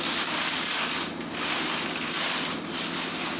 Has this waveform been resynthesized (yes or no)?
no